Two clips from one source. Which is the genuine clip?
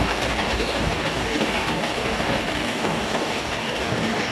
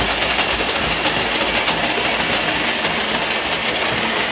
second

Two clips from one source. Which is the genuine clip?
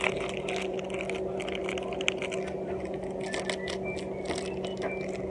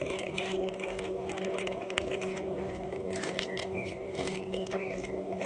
first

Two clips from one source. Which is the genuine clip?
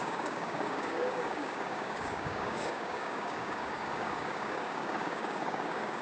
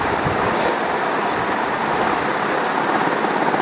second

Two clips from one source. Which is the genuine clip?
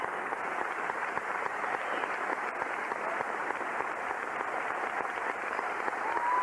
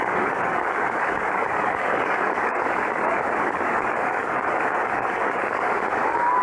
first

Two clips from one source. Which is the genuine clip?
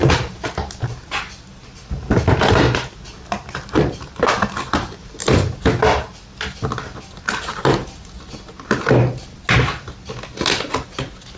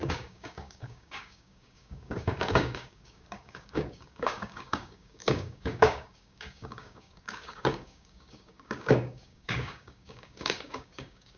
first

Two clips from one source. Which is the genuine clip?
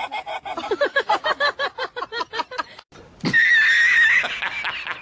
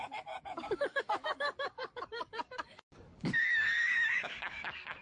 first